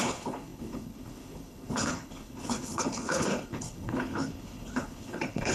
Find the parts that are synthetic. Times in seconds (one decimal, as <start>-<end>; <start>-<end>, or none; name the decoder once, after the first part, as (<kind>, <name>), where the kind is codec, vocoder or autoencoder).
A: 0.0-5.5 (codec, HILCodec)